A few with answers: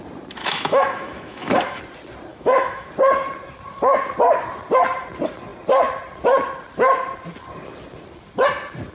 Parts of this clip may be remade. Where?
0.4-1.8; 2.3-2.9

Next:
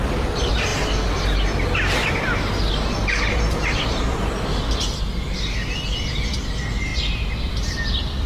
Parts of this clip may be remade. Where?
3.0-4.6; 6.9-7.7